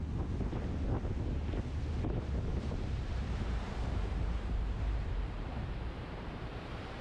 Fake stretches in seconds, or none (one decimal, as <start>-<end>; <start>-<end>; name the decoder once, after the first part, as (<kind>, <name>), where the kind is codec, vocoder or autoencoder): 2.5-7.0 (vocoder, BigVGAN v2)